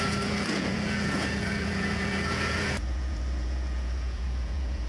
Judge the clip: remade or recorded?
remade